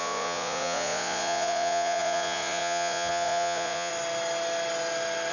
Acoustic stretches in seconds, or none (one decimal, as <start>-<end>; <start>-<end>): 3.9-5.3